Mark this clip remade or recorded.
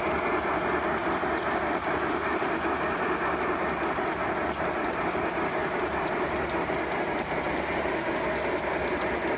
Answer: recorded